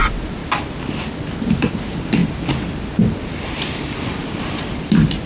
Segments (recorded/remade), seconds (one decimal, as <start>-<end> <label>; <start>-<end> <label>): 0.0-0.4 remade; 0.4-0.9 recorded; 0.9-5.3 remade